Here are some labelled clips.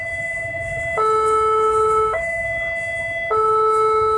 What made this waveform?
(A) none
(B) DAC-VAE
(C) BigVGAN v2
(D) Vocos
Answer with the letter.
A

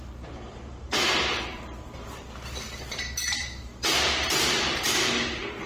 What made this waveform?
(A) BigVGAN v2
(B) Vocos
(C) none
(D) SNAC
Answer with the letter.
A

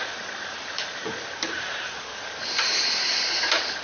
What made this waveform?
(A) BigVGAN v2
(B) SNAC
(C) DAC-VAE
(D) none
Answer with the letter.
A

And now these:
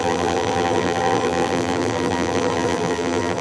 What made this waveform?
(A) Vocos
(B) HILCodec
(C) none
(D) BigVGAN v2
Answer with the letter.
D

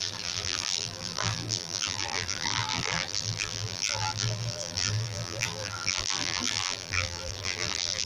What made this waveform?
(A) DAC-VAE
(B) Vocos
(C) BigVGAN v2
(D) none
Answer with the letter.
C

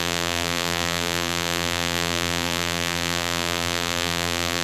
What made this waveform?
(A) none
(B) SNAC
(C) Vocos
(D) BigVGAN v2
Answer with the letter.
D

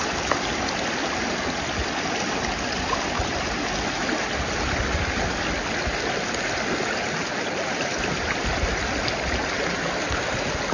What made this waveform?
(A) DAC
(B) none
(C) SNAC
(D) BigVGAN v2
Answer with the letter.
B